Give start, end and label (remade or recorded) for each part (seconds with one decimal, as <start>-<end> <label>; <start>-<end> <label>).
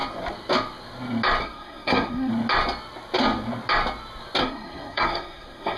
0.0-1.4 recorded; 1.4-2.3 remade; 2.3-4.4 recorded; 4.4-5.8 remade